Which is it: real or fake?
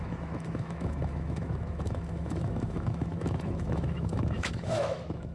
fake